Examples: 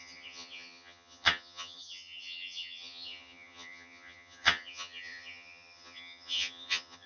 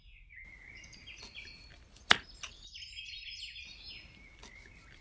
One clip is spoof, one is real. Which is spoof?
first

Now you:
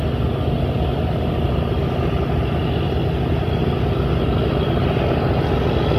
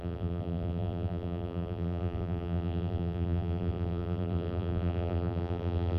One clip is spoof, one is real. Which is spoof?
second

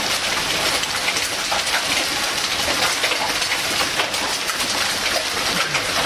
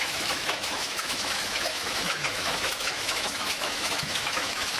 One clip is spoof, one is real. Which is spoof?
second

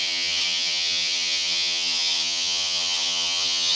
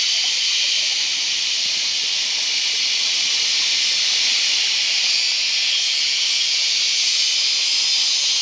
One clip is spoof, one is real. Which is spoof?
first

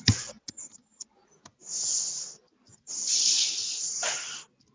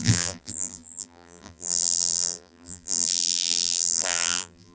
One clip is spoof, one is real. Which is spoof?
second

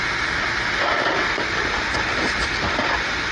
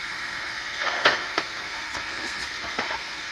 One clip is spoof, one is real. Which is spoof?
second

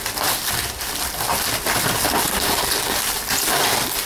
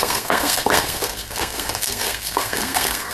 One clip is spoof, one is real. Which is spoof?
second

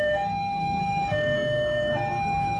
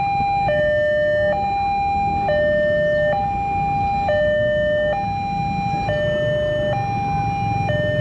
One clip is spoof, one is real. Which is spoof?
first